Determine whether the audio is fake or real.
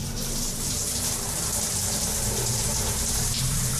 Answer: fake